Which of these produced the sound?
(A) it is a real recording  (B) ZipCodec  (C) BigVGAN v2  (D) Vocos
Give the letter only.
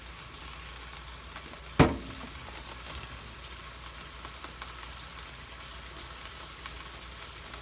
A